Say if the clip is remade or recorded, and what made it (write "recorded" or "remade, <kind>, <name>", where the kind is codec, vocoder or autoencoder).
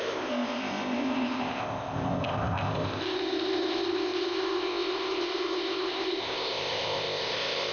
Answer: remade, codec, ZipCodec